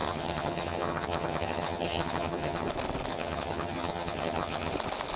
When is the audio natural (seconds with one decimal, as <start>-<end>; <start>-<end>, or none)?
2.7-3.1; 4.7-5.2